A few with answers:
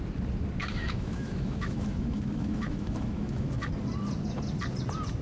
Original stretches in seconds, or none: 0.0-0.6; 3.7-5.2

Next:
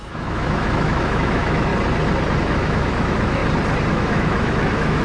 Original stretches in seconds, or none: 1.7-2.4; 3.4-3.9

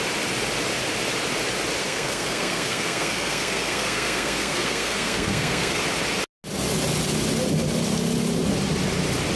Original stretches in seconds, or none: 0.0-1.8; 5.8-9.4

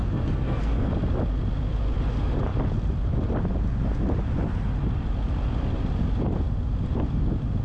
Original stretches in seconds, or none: 0.9-7.6

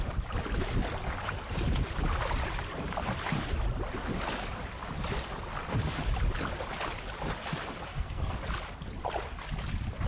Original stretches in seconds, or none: 0.0-7.9; 8.4-10.1